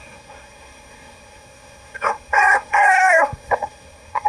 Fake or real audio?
fake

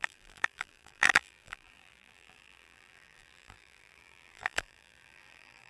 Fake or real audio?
fake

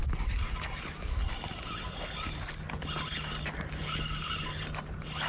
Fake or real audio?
real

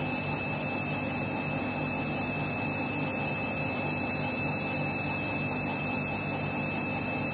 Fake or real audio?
real